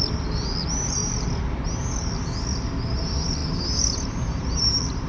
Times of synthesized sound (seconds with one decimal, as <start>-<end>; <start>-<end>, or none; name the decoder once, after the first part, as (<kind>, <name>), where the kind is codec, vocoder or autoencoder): 0.0-1.0 (vocoder, BigVGAN v2); 2.9-3.4; 4.6-5.1